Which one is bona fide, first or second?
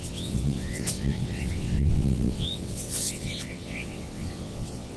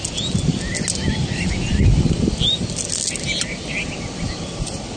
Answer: second